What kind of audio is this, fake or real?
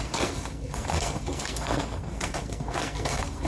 fake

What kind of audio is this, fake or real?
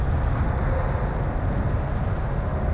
real